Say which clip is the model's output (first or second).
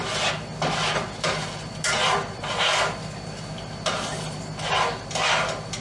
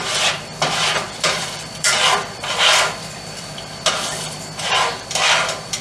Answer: second